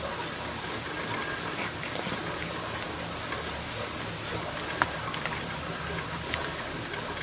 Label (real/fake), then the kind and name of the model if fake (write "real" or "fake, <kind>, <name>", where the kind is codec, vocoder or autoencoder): real